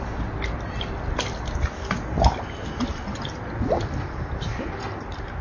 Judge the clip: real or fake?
real